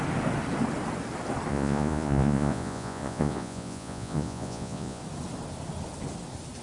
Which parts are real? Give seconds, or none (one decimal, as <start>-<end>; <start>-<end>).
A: 0.0-1.5; 5.0-6.6